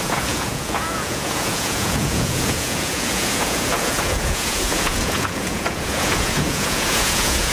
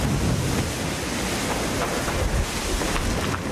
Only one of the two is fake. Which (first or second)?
first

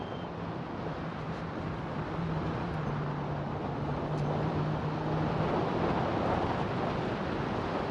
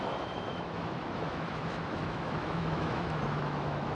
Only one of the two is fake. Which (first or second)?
second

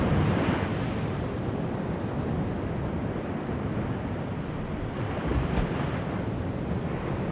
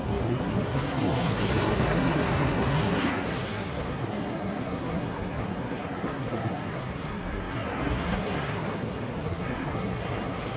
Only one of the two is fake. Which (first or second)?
second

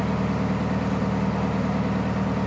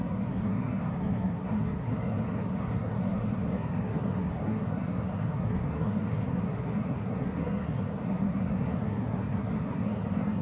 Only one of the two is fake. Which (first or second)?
second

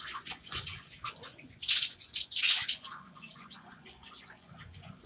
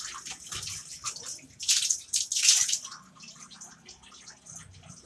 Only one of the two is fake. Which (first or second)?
first